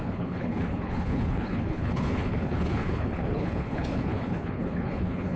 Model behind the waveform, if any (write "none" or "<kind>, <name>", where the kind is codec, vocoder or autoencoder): codec, HILCodec